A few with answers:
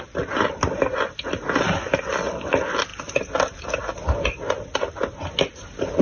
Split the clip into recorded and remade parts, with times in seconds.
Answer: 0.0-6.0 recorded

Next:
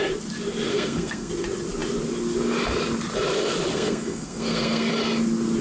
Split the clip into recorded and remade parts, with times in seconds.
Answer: 0.0-0.7 recorded; 0.7-1.3 remade; 1.3-3.7 recorded; 3.7-4.9 remade; 4.9-5.6 recorded

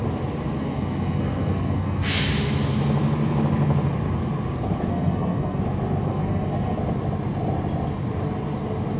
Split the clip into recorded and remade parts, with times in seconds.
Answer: 0.0-0.6 recorded; 0.6-2.2 remade; 2.2-4.9 recorded; 4.9-5.6 remade; 5.6-6.1 recorded; 6.1-6.8 remade; 6.8-9.0 recorded

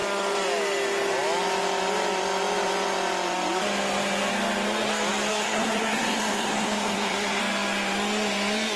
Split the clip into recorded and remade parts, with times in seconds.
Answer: 0.0-5.3 recorded; 5.3-7.4 remade; 7.4-8.8 recorded

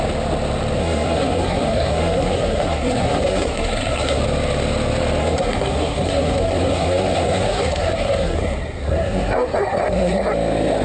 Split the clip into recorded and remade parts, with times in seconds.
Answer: 0.0-0.8 recorded; 0.8-4.2 remade; 4.2-5.2 recorded; 5.2-10.3 remade; 10.3-10.8 recorded